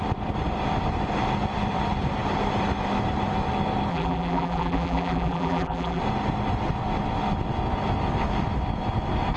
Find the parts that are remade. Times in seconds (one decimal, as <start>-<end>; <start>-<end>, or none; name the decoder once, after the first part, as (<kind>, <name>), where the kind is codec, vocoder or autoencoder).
3.9-6.0 (vocoder, BigVGAN v2)